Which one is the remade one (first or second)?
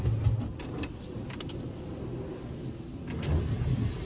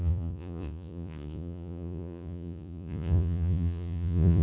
second